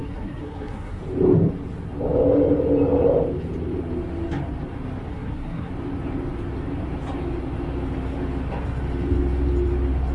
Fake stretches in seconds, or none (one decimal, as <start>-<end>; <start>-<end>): 0.0-1.0; 5.1-5.7